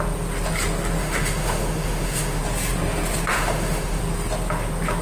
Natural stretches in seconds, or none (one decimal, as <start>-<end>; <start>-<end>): 0.0-1.0; 2.4-3.3; 4.0-5.0